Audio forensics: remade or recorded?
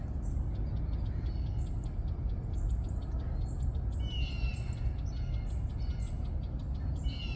recorded